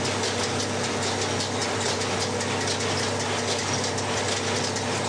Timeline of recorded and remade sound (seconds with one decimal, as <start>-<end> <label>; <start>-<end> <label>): 0.0-5.1 recorded